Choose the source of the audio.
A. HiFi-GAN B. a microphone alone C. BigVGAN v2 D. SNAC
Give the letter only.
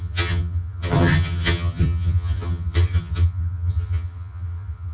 A